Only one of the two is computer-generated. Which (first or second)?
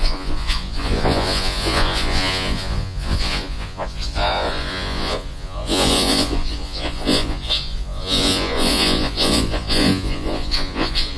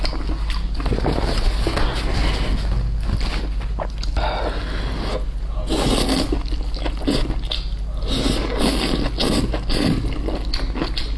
first